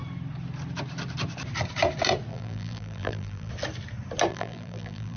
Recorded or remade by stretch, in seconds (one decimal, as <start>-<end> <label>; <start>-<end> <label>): 0.0-2.3 recorded; 2.3-3.5 remade; 3.5-4.3 recorded; 4.3-5.2 remade